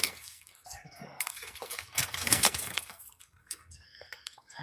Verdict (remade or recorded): remade